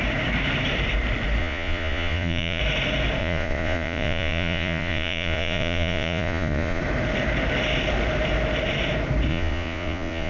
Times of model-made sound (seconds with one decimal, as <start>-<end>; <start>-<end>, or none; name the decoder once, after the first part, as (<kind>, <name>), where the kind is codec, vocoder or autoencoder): 1.4-2.6 (vocoder, Vocos); 3.2-6.8; 9.3-10.3